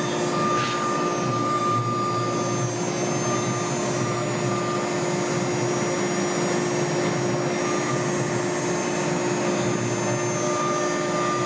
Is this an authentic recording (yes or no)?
yes